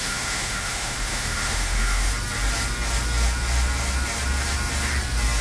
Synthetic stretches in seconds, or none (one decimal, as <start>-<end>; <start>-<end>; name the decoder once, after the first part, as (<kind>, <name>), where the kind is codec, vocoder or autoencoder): 0.0-2.1 (autoencoder, DAC-VAE)